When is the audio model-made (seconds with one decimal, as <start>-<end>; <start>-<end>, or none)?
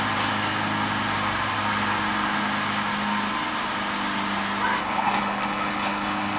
4.8-6.4